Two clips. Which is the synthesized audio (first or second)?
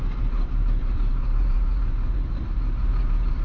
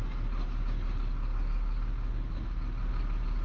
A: first